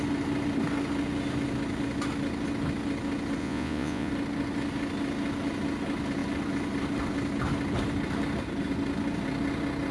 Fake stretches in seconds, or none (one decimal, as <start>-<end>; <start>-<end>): 3.4-4.1